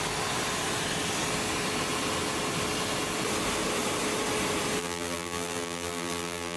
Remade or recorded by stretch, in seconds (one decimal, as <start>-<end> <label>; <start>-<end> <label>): 0.0-4.8 recorded; 4.8-6.6 remade